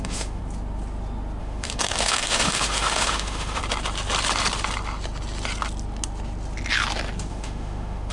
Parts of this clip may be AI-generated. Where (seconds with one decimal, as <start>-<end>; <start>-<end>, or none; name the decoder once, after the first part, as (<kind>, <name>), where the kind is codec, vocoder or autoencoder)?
0.0-0.4 (autoencoder, DAC-VAE); 1.4-3.6; 7.3-8.1

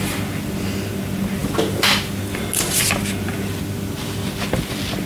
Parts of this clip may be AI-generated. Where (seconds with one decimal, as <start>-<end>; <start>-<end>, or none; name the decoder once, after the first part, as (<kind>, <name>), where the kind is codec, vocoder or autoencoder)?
none